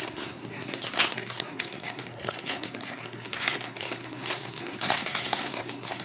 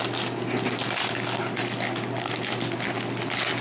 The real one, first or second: second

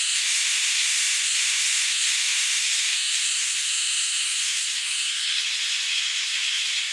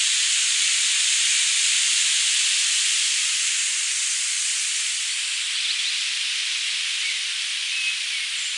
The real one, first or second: second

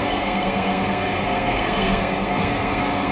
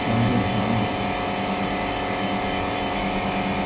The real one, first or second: second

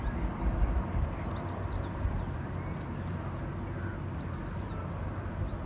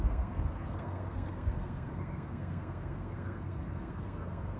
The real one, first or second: first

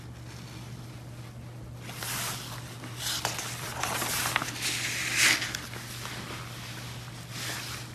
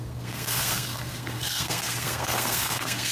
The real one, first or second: first